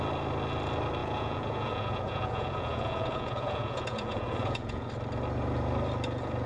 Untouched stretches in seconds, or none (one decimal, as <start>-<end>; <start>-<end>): 0.0-1.0; 4.9-6.5